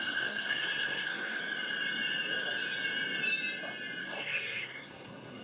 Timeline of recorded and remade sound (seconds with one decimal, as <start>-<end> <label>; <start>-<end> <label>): 0.0-1.4 remade; 1.4-4.0 recorded; 4.0-5.4 remade